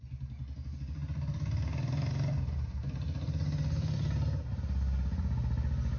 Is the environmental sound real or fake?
real